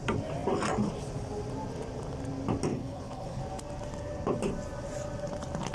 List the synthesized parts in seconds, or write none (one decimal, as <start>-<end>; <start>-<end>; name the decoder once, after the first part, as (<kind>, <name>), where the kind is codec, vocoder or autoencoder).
2.7-3.4 (codec, HILCodec)